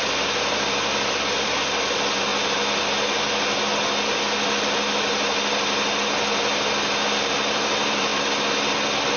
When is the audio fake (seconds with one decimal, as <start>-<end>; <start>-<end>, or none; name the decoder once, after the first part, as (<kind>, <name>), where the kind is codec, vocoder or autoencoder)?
0.0-2.3 (vocoder, BigVGAN v2); 7.3-8.1